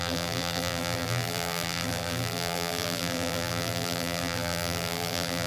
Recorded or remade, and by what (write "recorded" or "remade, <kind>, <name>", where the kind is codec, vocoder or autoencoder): remade, vocoder, BigVGAN v2